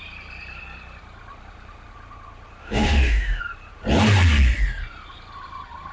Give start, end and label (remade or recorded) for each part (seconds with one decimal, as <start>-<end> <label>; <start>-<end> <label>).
0.0-2.6 recorded; 2.6-3.4 remade; 3.4-5.9 recorded